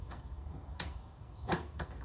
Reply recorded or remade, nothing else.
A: remade